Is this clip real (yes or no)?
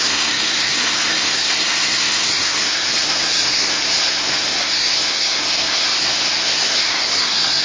no